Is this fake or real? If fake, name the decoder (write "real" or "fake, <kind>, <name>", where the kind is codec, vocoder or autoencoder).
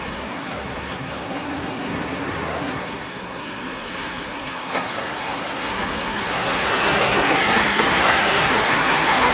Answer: fake, codec, SNAC